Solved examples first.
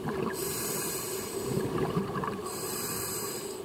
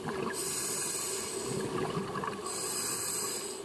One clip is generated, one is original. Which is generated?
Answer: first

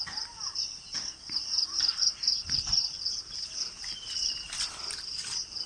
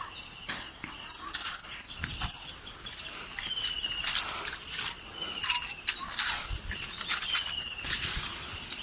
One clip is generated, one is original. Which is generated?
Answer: first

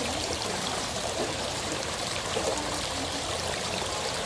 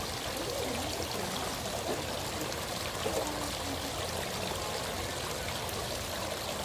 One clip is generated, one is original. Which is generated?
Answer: first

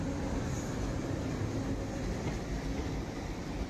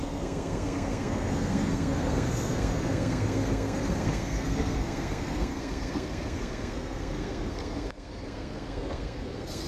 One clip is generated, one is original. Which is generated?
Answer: second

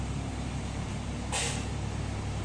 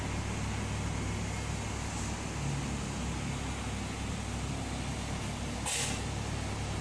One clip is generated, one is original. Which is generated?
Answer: first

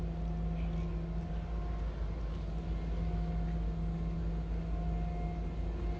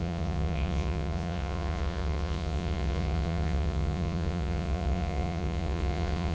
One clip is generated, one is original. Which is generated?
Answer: second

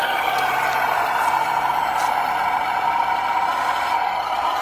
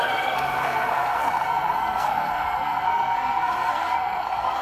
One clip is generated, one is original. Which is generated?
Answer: second